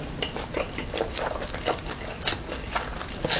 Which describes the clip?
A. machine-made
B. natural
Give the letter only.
B